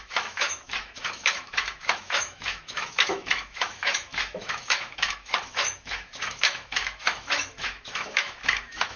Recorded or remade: remade